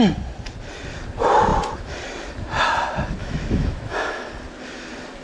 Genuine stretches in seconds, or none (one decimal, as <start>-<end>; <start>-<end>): 0.0-3.2; 4.3-5.2